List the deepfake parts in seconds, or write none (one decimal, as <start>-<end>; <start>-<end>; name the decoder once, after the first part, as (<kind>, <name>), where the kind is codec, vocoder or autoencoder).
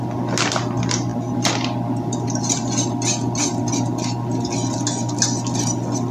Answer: none